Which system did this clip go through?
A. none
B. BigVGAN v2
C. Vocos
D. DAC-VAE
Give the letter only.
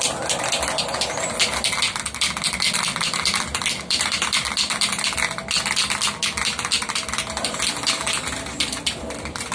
A